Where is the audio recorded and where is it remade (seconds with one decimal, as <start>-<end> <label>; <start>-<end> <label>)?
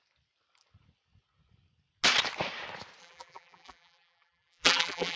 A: 0.0-3.0 recorded; 3.0-5.2 remade